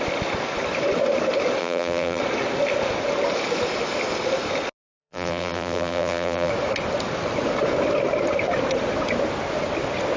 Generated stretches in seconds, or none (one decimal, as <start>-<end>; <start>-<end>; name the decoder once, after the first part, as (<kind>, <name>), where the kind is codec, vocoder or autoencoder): 1.6-2.2 (vocoder, BigVGAN v2); 5.0-6.5